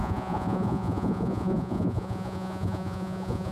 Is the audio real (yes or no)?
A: no